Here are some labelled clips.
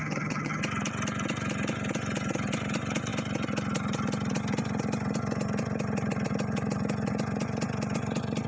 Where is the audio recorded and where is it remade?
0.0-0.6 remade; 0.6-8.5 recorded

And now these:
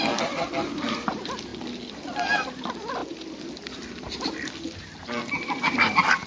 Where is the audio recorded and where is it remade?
0.0-6.3 recorded

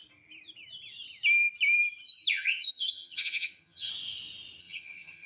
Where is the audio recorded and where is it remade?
0.0-2.3 recorded; 2.3-3.9 remade; 3.9-4.6 recorded; 4.6-5.3 remade